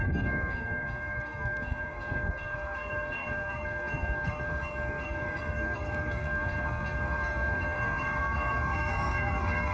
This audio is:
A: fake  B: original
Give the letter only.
A